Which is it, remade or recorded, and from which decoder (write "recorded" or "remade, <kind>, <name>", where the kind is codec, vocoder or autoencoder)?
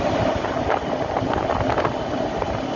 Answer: recorded